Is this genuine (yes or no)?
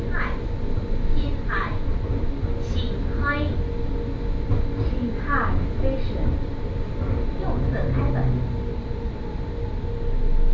yes